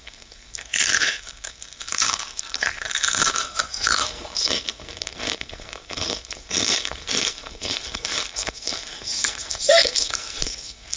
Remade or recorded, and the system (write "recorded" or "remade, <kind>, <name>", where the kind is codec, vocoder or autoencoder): remade, codec, SNAC